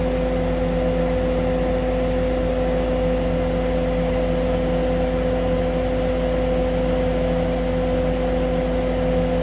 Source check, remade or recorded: recorded